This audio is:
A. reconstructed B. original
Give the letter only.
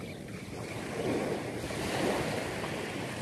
B